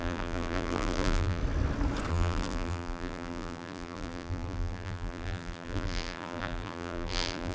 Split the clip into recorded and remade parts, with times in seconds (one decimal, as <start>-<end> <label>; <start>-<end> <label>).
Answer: 0.0-1.4 remade; 1.4-2.1 recorded; 2.1-7.5 remade